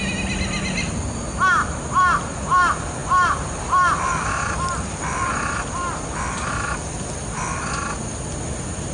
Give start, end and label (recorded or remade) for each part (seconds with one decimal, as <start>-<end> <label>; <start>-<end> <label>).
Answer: 0.0-8.9 recorded